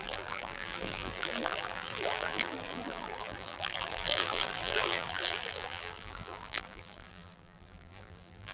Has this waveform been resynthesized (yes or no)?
yes